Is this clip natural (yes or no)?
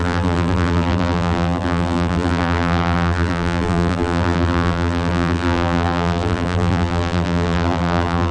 no